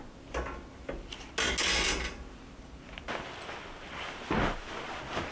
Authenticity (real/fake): real